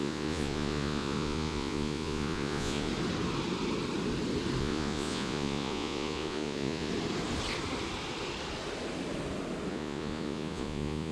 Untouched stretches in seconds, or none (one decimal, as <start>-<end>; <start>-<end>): 2.9-4.6; 6.9-9.7